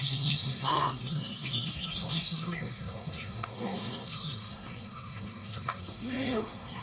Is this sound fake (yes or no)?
yes